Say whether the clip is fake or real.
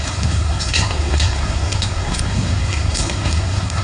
fake